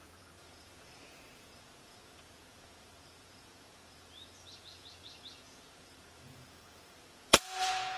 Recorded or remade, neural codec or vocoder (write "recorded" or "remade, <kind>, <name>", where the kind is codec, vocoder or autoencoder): remade, vocoder, Vocos